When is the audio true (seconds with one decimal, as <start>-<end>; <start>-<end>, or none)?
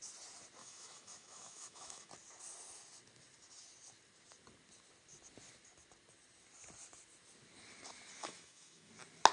0.0-0.6; 2.1-8.2; 8.9-9.3